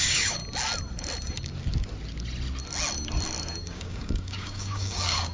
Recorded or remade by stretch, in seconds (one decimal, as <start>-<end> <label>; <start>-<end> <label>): 0.0-0.4 remade; 0.4-3.6 recorded; 3.6-5.3 remade